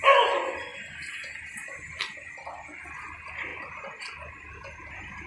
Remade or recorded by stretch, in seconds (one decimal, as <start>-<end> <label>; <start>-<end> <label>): 0.0-5.3 recorded